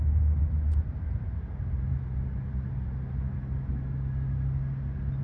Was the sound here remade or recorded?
recorded